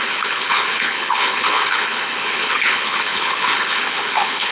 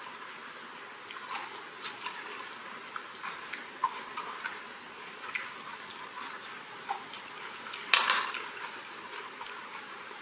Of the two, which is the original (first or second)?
second